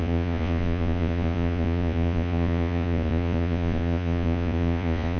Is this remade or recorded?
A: remade